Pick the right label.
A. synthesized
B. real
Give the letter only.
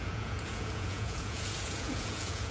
A